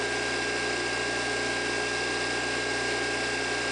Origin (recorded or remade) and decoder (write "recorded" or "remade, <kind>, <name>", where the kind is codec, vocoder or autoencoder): recorded